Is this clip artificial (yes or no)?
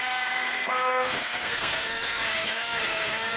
yes